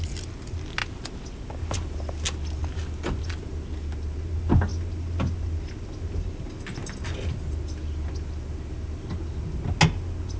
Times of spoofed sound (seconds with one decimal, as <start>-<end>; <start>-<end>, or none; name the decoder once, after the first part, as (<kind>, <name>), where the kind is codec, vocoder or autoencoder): none